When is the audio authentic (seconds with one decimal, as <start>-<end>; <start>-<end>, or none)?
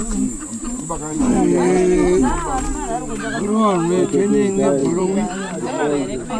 1.2-4.8